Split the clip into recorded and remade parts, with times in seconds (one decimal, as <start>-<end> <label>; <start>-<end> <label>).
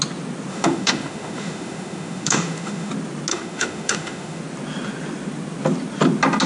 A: 0.0-0.5 recorded; 0.5-2.9 remade; 2.9-3.3 recorded; 3.3-4.4 remade; 4.4-6.5 recorded